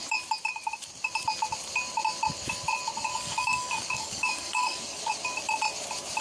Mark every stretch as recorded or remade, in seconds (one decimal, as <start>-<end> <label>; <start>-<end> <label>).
0.0-3.1 recorded; 3.1-5.0 remade; 5.0-6.2 recorded